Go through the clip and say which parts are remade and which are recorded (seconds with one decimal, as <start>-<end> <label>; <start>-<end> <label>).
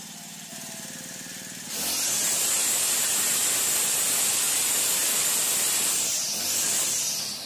0.0-5.0 recorded; 5.0-6.0 remade; 6.0-7.5 recorded